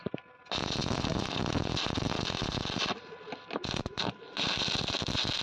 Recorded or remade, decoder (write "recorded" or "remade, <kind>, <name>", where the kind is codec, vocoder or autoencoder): recorded